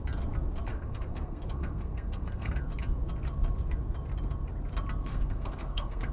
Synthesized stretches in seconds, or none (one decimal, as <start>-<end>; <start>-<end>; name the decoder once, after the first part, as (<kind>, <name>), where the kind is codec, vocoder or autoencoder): 0.7-2.6 (codec, SNAC); 5.1-6.1